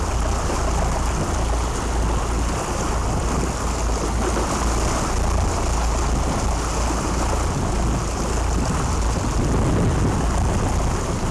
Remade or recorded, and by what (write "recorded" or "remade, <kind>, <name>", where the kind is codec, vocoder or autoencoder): recorded